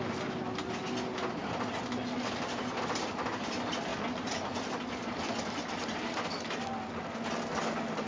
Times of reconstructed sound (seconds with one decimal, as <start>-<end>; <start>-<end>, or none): 1.4-2.0; 3.9-6.9